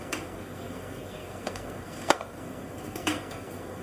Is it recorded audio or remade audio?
remade